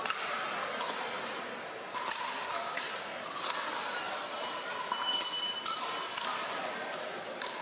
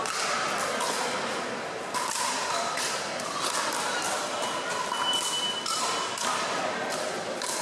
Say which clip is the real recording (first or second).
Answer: second